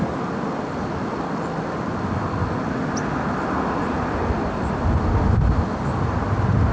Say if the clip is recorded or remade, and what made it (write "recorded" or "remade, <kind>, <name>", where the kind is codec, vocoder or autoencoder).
recorded